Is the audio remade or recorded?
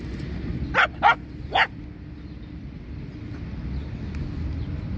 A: recorded